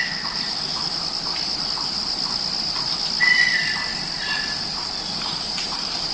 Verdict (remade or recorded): recorded